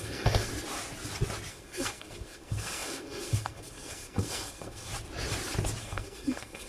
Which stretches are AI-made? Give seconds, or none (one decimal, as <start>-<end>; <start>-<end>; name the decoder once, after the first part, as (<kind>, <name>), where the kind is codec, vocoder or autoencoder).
0.0-0.5 (codec, SNAC); 1.5-4.9; 5.8-6.7